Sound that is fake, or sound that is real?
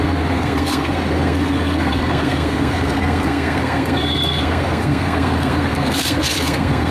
fake